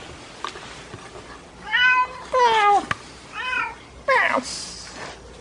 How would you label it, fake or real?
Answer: real